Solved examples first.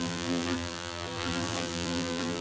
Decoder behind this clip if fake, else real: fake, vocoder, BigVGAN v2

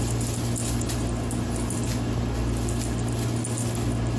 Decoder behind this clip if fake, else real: real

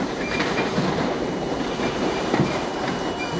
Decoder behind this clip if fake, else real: fake, vocoder, BigVGAN v2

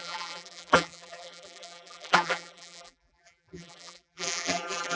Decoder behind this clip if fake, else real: fake, vocoder, BigVGAN v2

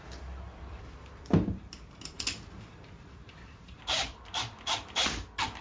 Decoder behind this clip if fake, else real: fake, vocoder, BigVGAN v2